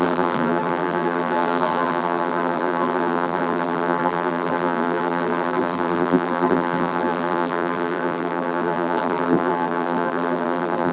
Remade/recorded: remade